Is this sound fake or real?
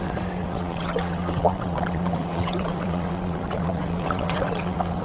fake